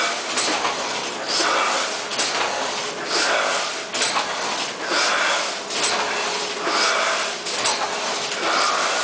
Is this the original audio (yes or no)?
yes